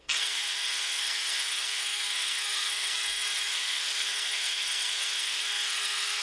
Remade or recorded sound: remade